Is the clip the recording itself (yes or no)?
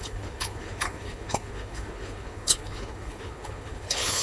no